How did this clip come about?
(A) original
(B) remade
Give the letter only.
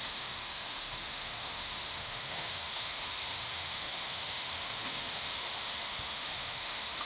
B